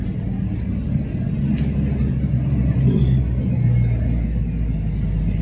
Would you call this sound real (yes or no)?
yes